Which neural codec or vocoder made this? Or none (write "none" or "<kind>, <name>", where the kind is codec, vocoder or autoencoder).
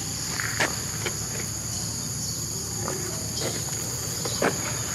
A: vocoder, BigVGAN v2